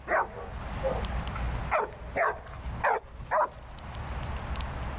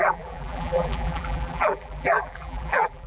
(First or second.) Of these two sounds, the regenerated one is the second